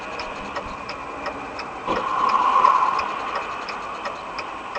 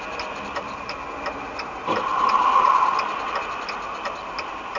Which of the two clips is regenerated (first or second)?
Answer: first